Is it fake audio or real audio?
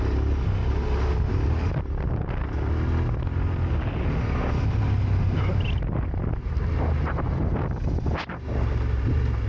real